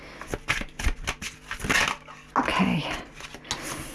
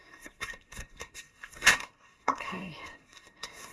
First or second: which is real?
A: first